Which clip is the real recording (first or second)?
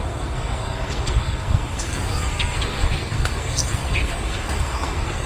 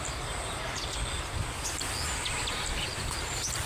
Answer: second